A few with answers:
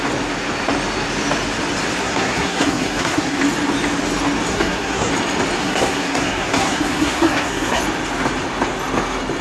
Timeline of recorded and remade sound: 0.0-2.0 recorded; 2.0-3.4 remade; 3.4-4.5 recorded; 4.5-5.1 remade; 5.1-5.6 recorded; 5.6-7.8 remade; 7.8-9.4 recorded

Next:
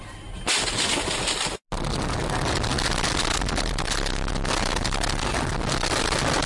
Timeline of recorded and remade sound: 0.0-6.5 recorded

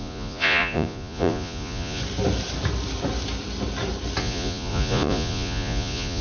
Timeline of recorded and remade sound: 0.0-2.0 remade; 2.0-4.2 recorded; 4.2-6.2 remade

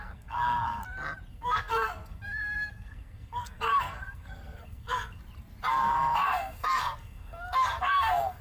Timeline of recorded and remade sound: 0.0-0.8 remade; 0.8-1.3 recorded; 1.3-5.2 remade; 5.2-5.7 recorded; 5.7-8.4 remade

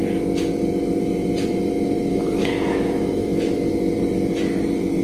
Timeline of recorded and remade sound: 0.0-2.1 recorded; 2.1-3.7 remade; 3.7-5.0 recorded

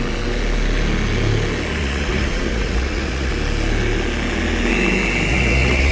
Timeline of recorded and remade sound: 0.0-1.8 recorded; 1.8-3.3 remade; 3.3-5.3 recorded; 5.3-5.9 remade

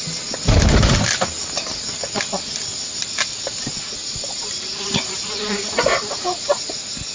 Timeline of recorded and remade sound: 0.0-4.0 recorded; 4.0-6.6 remade; 6.6-7.1 recorded

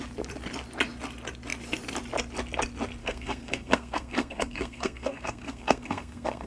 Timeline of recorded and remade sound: 0.0-3.0 recorded; 3.0-6.5 remade